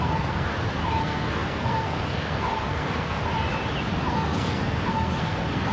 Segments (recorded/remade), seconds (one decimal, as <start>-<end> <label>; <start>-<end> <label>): 0.0-0.5 remade; 0.5-1.0 recorded; 1.0-3.3 remade; 3.3-4.1 recorded; 4.1-5.7 remade